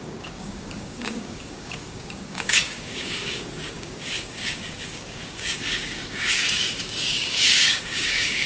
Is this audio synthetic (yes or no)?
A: yes